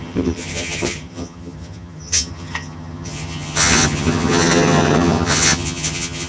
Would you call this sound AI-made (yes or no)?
yes